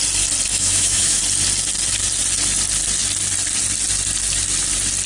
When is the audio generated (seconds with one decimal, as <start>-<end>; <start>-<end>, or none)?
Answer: 0.5-1.2